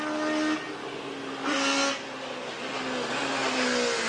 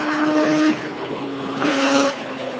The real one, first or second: first